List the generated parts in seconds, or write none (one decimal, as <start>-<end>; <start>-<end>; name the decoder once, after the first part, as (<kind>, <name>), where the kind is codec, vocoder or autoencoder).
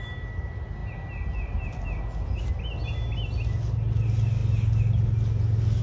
none